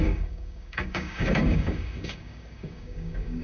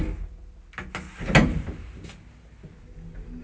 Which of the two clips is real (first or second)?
second